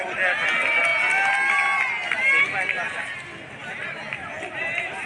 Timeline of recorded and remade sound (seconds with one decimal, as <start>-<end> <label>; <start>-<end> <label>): 0.0-5.1 recorded